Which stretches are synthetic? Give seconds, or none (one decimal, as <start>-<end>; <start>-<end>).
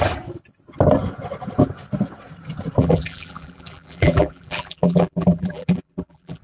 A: 2.8-6.4